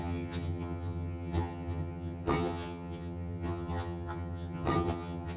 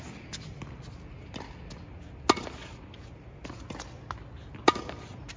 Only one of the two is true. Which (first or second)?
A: second